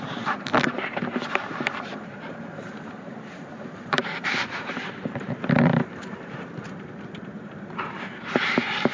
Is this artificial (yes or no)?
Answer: yes